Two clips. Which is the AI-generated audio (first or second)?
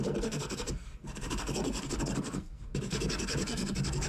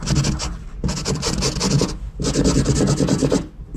first